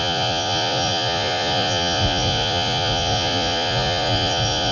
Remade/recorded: remade